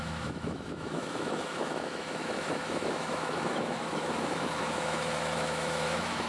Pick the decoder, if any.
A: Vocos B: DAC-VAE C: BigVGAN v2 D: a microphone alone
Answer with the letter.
B